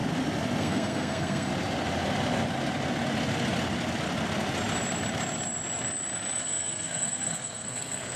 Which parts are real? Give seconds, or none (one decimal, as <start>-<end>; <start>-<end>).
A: 0.0-0.6; 1.5-6.4